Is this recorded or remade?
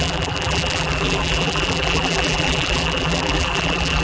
remade